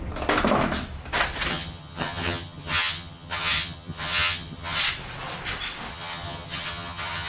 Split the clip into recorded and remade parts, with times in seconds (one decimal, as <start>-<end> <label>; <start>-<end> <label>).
0.0-1.5 recorded; 1.5-4.8 remade; 4.8-5.9 recorded; 5.9-7.3 remade